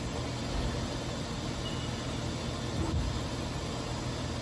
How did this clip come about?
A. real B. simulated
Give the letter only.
A